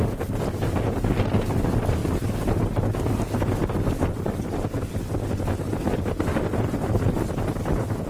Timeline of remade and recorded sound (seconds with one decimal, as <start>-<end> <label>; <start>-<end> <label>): 0.0-8.1 recorded